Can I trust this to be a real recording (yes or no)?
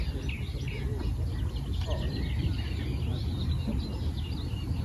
yes